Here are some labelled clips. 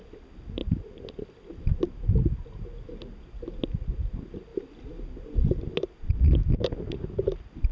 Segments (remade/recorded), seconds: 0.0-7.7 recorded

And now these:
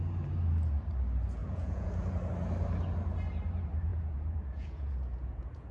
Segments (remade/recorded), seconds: 0.0-1.4 recorded; 1.4-2.1 remade; 2.1-3.9 recorded; 3.9-5.7 remade

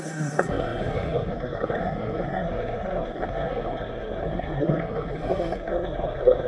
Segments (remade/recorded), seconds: 0.0-6.5 remade

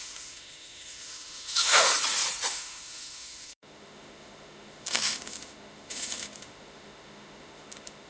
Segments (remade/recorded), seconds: 0.0-1.9 remade; 1.9-2.5 recorded; 2.5-8.1 remade

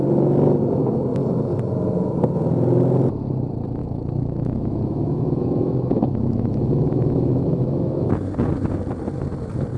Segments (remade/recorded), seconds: 0.0-3.8 recorded; 3.8-8.1 remade; 8.1-9.8 recorded

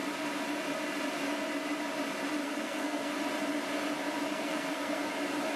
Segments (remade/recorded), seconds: 0.0-2.4 recorded; 2.4-3.1 remade; 3.1-4.3 recorded; 4.3-5.1 remade; 5.1-5.6 recorded

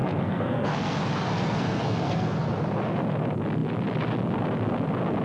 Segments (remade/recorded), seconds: 0.0-2.5 remade; 2.5-5.2 recorded

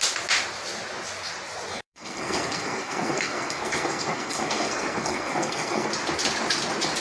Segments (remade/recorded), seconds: 0.0-1.7 recorded; 1.7-5.9 remade; 5.9-7.0 recorded